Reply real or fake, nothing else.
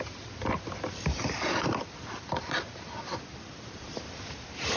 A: real